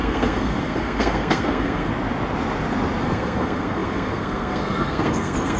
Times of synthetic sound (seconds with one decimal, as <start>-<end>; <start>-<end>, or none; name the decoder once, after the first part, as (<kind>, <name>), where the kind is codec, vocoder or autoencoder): 0.0-1.9 (codec, SNAC); 3.0-5.6